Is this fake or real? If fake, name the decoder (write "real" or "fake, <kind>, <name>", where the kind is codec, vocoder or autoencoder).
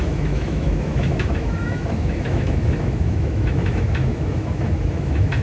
fake, autoencoder, DAC-VAE